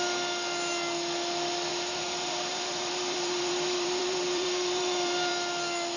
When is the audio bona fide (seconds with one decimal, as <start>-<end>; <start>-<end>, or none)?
0.0-1.7; 5.3-6.0